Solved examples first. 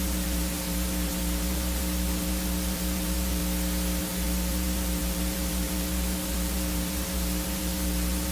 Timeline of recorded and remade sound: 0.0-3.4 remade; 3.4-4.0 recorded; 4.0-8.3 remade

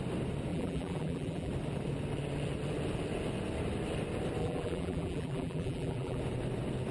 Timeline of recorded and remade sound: 0.0-0.5 recorded; 0.5-1.5 remade; 1.5-4.4 recorded; 4.4-6.2 remade; 6.2-6.9 recorded

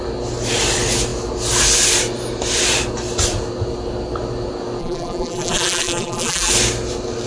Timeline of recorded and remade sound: 0.0-4.8 recorded; 4.8-6.5 remade; 6.5-7.3 recorded

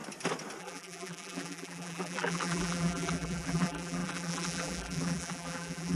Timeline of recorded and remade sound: 0.0-0.6 recorded; 0.6-6.0 remade

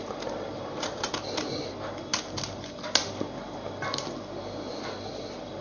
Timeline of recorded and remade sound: 0.0-0.5 recorded; 0.5-1.1 remade; 1.1-5.6 recorded